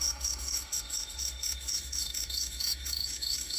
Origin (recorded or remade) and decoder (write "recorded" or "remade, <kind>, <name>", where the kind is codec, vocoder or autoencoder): remade, autoencoder, DAC-VAE